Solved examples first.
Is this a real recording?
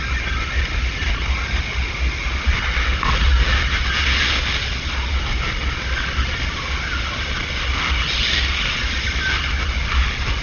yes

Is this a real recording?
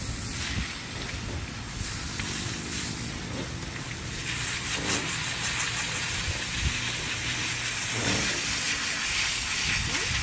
yes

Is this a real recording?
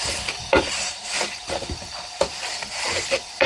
no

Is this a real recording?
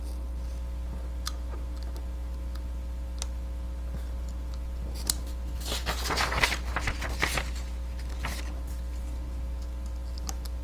yes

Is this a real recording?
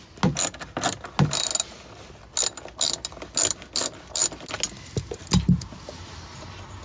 yes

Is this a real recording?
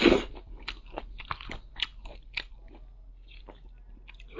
yes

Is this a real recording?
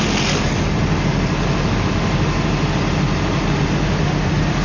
yes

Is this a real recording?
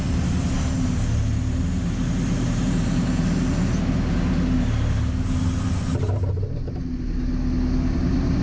yes